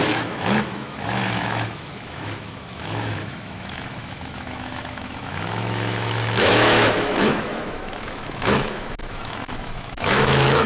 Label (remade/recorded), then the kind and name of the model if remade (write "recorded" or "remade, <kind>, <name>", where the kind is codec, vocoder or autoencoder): remade, autoencoder, DAC-VAE